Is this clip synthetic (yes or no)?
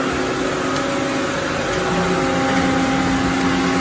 no